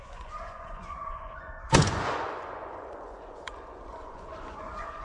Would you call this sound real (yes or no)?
no